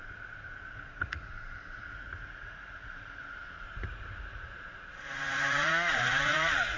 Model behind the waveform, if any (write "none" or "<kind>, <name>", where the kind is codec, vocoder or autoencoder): vocoder, Vocos